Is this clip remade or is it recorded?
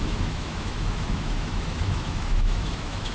remade